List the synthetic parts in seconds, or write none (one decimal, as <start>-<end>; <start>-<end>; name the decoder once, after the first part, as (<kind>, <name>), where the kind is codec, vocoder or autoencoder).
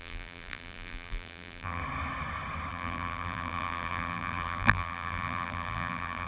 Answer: 0.0-1.8 (vocoder, BigVGAN v2); 2.7-6.3